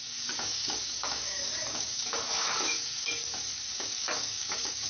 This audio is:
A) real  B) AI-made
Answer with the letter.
B